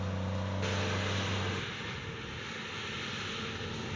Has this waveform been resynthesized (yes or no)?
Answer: no